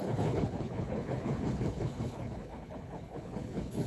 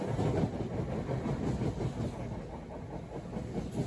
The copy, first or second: first